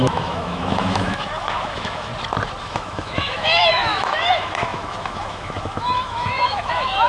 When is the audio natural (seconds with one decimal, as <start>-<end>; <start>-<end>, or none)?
2.1-2.6